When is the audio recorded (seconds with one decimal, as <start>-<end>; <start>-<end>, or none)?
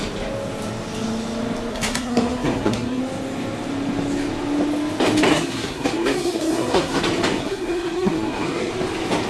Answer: 0.0-1.7; 3.0-5.3; 7.0-7.4; 8.7-9.3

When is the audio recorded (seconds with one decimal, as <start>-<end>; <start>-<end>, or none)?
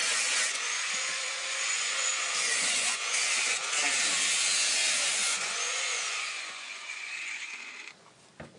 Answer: 3.7-5.2; 8.2-8.6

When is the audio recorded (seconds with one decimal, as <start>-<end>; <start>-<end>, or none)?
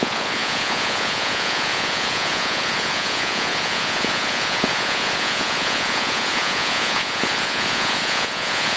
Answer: none